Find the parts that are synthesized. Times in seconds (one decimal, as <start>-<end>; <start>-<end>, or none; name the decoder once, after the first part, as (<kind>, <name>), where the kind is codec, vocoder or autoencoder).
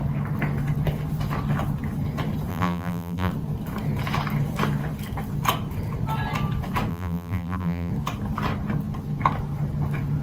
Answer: 2.5-3.3 (vocoder, BigVGAN v2); 6.9-7.9